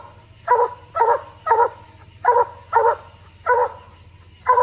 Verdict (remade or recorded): recorded